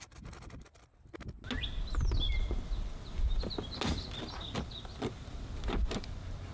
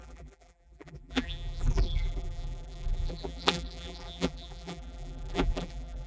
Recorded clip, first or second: first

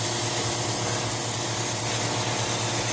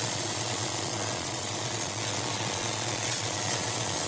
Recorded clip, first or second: first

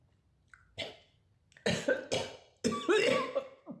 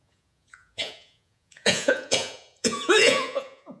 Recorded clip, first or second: first